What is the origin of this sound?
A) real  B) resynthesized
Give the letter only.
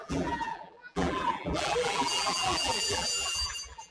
B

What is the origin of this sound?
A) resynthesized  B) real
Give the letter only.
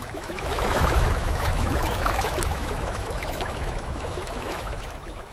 A